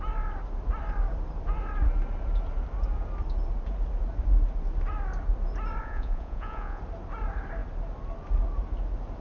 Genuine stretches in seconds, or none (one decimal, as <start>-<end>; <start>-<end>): 0.0-5.8; 6.8-9.2